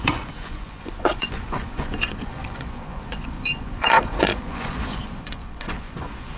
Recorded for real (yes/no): no